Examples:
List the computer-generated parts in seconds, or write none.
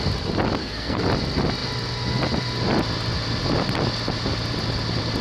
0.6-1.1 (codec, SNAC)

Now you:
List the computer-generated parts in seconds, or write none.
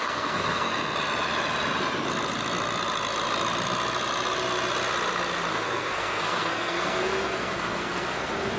0.0-0.7 (codec, SNAC); 5.5-8.6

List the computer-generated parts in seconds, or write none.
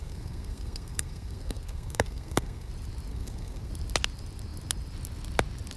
0.0-2.7 (codec, SNAC); 3.1-3.7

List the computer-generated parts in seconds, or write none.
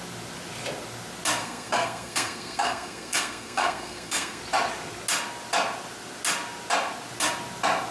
1.4-4.4 (codec, SNAC)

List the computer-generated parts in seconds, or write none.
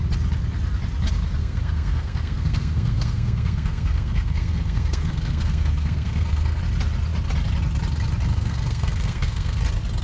1.4-6.6 (codec, SNAC); 8.3-9.6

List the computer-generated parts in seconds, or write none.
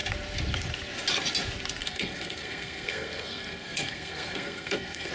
1.8-5.1 (codec, SNAC)